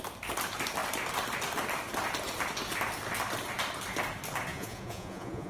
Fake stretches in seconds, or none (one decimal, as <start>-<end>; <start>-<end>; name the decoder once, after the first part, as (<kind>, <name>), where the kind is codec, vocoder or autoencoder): 4.5-5.5 (vocoder, Vocos)